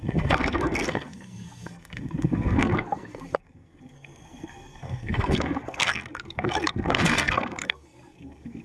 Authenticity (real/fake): fake